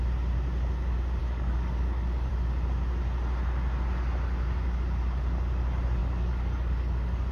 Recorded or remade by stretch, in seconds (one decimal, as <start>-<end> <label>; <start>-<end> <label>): 0.0-1.2 recorded; 1.2-2.3 remade; 2.3-6.0 recorded; 6.0-7.3 remade